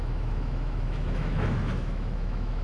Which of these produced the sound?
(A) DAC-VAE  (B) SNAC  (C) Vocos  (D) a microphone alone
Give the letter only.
A